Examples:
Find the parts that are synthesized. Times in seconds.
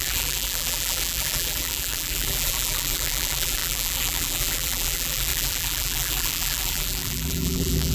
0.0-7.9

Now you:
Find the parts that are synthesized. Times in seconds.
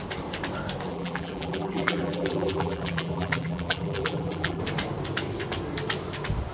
0.9-4.6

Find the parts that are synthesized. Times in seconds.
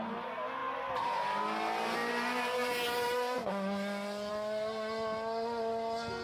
0.6-1.4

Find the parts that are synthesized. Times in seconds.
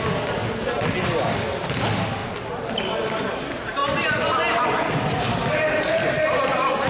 3.8-4.6; 6.0-6.9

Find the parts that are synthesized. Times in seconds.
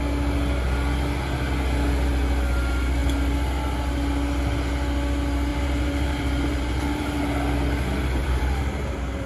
5.5-7.2; 8.2-9.3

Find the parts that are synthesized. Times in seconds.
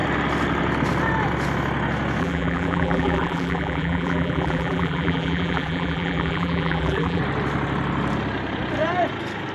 2.2-7.2